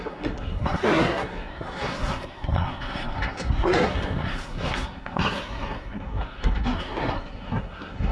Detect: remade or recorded remade